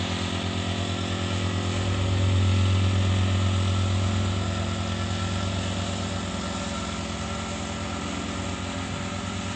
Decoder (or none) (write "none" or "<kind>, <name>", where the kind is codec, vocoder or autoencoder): none